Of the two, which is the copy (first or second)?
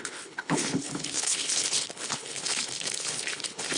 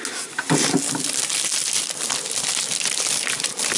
first